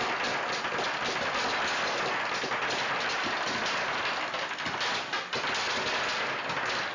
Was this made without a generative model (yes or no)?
yes